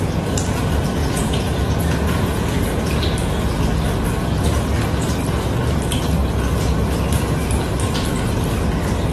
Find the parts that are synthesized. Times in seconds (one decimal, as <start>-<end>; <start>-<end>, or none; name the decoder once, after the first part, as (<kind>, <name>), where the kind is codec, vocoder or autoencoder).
1.0-2.8 (vocoder, Vocos)